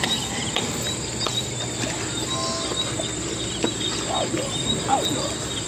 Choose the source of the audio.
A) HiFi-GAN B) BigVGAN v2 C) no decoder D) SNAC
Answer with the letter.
C